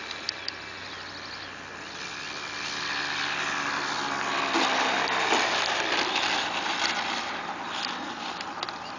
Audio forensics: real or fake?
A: real